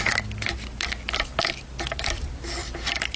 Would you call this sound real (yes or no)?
yes